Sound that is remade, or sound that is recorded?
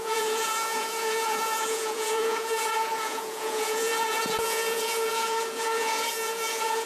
remade